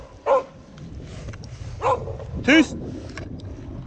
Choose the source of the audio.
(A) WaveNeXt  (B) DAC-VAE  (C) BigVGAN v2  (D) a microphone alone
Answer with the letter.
D